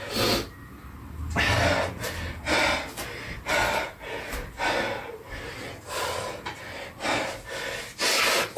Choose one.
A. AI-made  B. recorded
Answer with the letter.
B